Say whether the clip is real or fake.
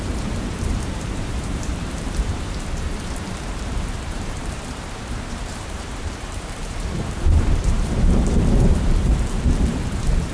fake